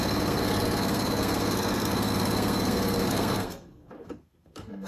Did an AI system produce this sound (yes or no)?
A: yes